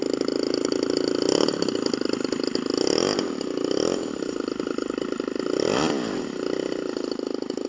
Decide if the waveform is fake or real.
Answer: real